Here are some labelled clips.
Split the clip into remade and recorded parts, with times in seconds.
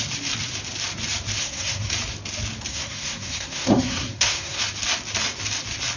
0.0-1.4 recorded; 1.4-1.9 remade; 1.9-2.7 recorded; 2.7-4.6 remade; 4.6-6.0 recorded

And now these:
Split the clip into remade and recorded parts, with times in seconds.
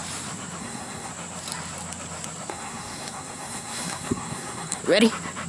0.0-0.6 recorded; 0.6-1.1 remade; 1.1-2.5 recorded; 2.5-4.8 remade; 4.8-5.5 recorded